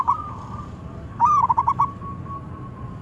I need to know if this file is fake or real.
fake